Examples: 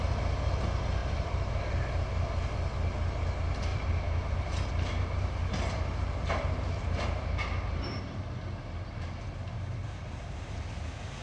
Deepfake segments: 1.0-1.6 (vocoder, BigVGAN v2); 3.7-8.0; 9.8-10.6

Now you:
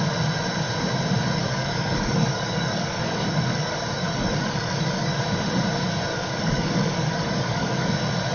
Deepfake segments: 1.4-5.2 (codec, DAC); 6.1-7.9

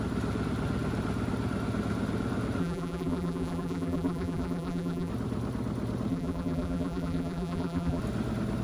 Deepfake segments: 2.6-5.1 (vocoder, BigVGAN v2); 6.1-8.0

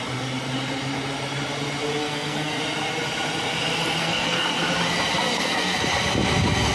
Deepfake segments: 2.0-2.6 (codec, SNAC); 4.0-4.6; 5.2-5.8

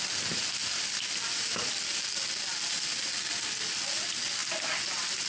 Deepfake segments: none

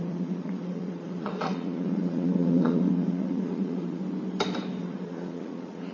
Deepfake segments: 0.0-4.0 (vocoder, Vocos); 4.8-5.9